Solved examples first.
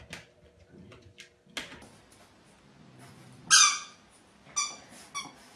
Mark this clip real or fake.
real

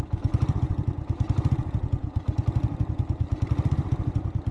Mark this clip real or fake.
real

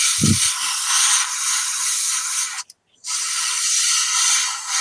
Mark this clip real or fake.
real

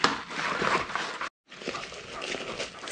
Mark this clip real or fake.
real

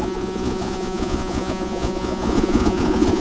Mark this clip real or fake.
fake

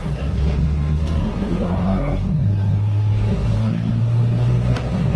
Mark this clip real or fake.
fake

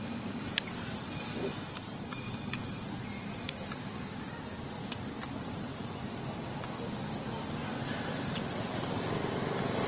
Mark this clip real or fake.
real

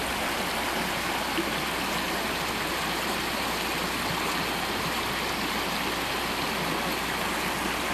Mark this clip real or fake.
real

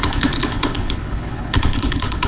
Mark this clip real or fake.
fake